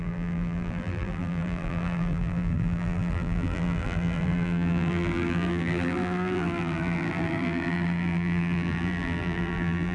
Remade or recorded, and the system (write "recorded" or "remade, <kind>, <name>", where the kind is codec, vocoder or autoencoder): remade, vocoder, BigVGAN v2